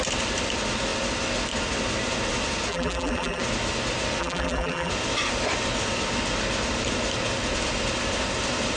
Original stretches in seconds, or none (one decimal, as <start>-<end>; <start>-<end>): 0.0-2.7; 3.4-4.2; 4.9-8.8